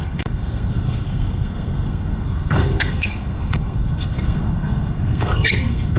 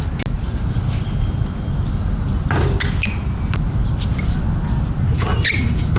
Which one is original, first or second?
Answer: second